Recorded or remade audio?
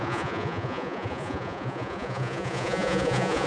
remade